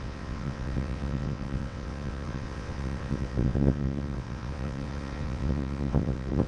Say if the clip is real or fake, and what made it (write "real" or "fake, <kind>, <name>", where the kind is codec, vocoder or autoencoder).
fake, vocoder, WaveNeXt